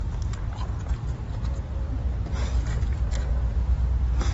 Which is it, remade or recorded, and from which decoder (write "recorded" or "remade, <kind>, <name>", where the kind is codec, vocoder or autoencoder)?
recorded